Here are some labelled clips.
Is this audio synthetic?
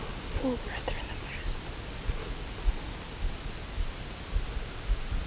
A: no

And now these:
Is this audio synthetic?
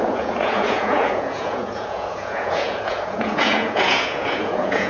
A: yes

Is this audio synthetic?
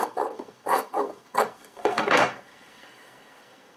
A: yes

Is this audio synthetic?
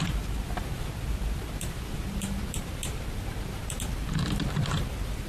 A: yes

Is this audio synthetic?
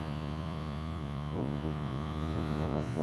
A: yes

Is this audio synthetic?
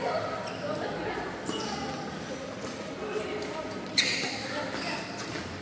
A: no